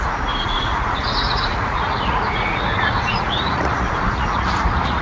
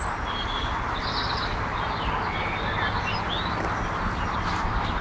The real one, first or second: second